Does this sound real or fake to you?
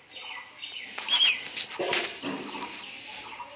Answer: real